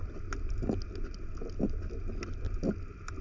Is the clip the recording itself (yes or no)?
yes